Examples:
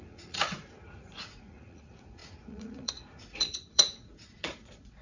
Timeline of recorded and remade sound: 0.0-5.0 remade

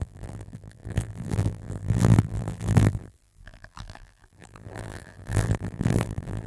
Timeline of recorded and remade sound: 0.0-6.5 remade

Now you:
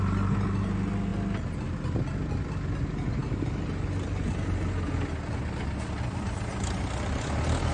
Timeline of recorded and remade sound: 0.0-7.7 recorded